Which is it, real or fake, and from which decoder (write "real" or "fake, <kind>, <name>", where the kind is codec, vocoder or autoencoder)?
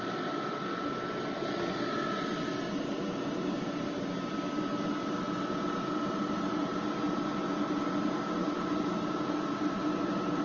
real